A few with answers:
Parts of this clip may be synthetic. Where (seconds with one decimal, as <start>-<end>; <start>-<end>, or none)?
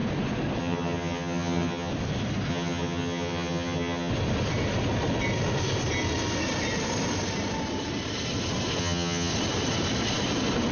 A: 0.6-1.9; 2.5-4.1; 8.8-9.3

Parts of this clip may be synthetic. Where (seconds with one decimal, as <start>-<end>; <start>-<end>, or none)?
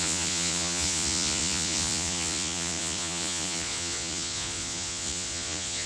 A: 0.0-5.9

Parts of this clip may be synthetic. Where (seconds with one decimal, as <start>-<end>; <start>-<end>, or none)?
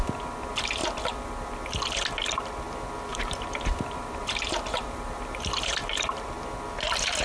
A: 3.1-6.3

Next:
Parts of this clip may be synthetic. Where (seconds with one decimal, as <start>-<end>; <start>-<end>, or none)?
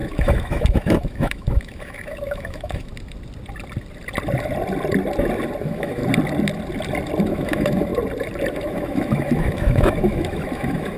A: 0.0-2.9; 5.6-6.0; 7.2-7.9; 8.5-11.0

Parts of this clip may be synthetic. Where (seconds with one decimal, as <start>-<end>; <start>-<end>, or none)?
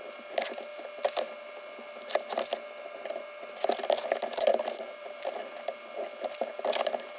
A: none